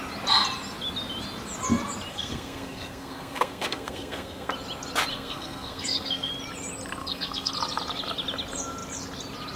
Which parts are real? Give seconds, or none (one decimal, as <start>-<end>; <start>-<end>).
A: 0.0-2.1; 4.5-5.1; 6.3-7.0; 7.5-9.6